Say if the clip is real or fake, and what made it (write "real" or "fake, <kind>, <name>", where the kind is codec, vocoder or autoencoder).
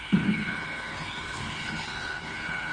fake, codec, HILCodec